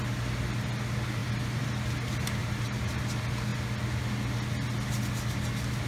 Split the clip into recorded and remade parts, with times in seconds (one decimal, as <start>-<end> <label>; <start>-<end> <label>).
0.0-1.2 recorded; 1.2-1.7 remade; 1.7-2.4 recorded; 2.4-3.0 remade; 3.0-5.9 recorded